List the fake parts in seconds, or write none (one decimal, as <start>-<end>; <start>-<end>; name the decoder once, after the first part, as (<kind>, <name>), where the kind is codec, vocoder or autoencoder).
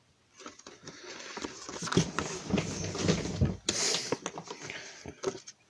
none